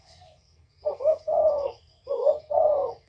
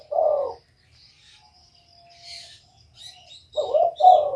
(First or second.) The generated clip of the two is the first